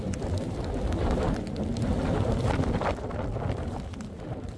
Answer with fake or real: real